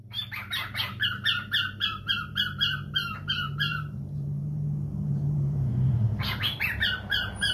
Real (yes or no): no